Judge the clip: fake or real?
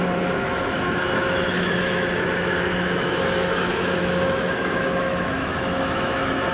fake